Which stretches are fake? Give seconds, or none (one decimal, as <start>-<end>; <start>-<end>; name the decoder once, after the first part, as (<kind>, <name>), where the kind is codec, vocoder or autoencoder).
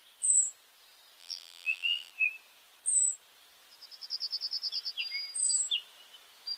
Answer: 1.2-2.1 (vocoder, BigVGAN v2)